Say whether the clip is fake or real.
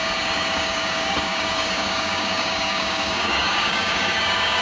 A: fake